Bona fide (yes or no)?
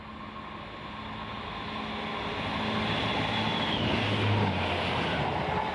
yes